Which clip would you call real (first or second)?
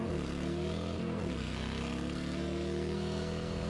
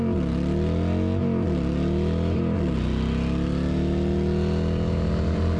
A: second